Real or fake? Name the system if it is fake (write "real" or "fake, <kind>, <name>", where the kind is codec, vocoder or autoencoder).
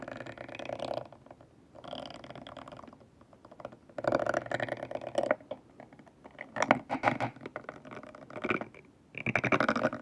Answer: real